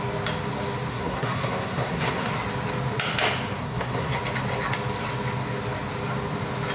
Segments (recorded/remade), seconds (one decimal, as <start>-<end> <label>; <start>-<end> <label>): 0.0-0.9 recorded; 0.9-2.3 remade; 2.3-3.6 recorded; 3.6-4.2 remade; 4.2-6.7 recorded